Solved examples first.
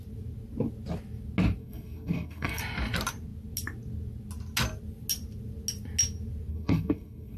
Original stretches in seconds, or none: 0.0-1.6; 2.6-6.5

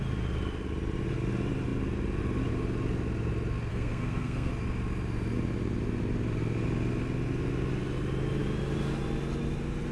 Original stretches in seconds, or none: 0.0-3.7; 4.5-9.9

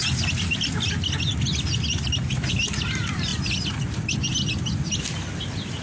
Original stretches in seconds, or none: 0.0-5.8

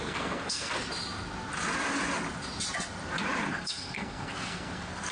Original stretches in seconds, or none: 0.7-3.5

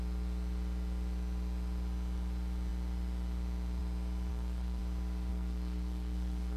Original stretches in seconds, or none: 0.0-4.3; 4.8-5.3

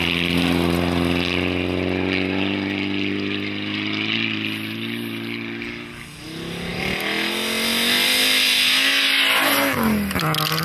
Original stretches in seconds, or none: 0.0-10.6

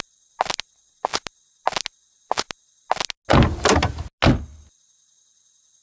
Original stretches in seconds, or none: 0.0-5.8